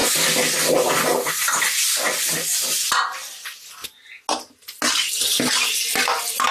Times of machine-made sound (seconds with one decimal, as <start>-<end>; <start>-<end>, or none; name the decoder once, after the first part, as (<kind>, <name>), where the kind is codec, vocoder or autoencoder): none